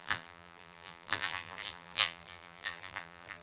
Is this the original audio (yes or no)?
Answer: no